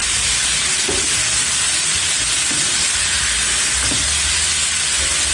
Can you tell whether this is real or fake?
real